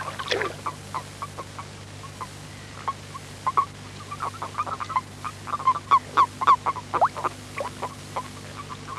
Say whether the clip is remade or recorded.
recorded